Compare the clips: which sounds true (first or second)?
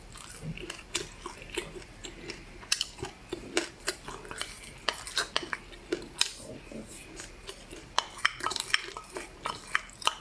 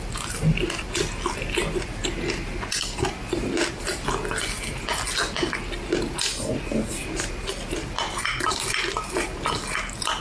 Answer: second